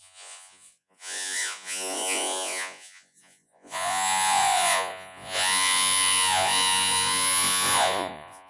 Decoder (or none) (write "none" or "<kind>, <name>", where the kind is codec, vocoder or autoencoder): vocoder, Vocos